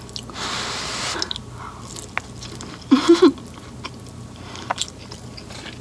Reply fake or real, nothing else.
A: real